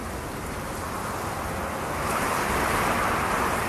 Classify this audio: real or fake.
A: real